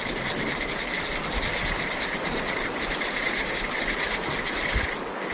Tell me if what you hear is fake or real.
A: real